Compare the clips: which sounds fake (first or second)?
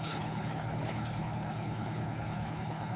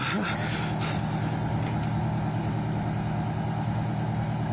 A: first